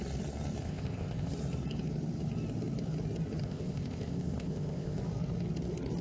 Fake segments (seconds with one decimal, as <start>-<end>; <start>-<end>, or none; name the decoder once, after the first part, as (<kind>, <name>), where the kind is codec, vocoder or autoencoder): 0.6-1.3 (codec, ZipCodec); 3.4-5.0